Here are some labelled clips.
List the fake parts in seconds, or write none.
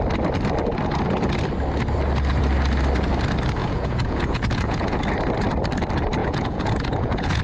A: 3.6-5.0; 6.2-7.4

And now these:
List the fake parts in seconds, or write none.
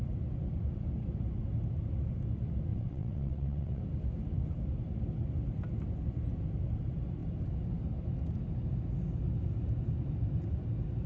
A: 2.7-3.8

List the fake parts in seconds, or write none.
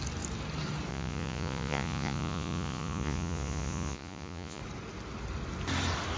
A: 0.9-4.6